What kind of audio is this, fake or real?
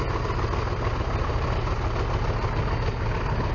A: real